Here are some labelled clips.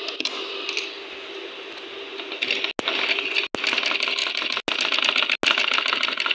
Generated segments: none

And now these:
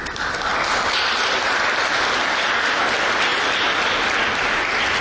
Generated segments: none

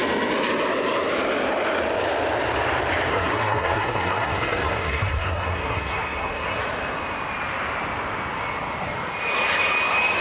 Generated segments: 3.1-6.6 (codec, SNAC)

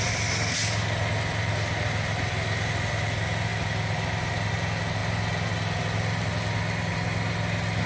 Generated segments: none

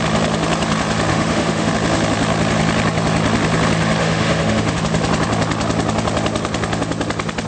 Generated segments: 1.1-1.7 (autoencoder, DAC-VAE); 4.0-4.8

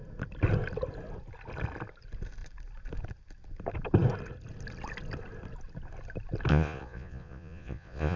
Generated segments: 6.5-8.2 (vocoder, Vocos)